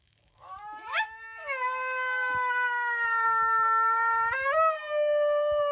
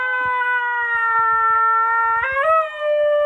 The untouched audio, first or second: second